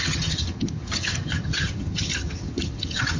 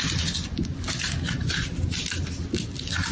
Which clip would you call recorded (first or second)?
second